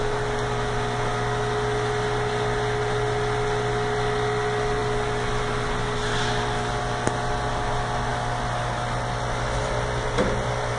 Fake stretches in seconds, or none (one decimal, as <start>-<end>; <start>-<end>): none